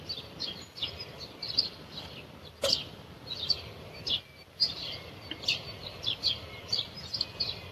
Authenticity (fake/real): real